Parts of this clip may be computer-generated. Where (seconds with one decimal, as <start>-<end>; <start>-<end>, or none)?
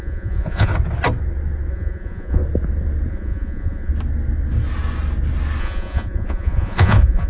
0.0-0.7; 1.7-2.4; 3.1-3.9; 5.6-7.3